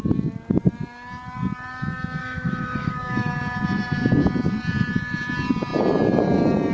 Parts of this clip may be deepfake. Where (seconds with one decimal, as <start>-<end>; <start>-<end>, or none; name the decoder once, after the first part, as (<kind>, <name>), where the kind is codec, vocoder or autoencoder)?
2.2-3.3 (autoencoder, DAC-VAE)